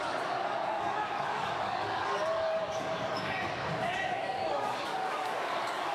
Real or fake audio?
fake